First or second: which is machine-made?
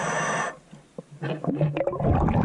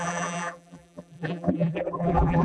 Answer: second